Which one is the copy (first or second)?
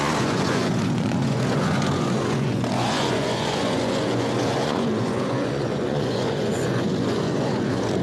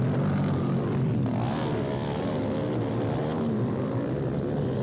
first